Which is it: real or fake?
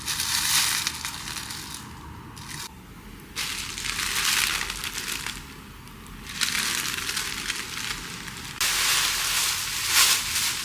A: real